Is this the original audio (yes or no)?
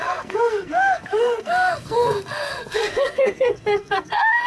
no